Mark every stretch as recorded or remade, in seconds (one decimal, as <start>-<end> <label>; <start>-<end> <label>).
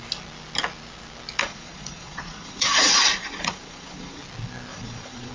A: 0.0-1.4 recorded; 1.4-4.2 remade; 4.2-4.7 recorded; 4.7-5.3 remade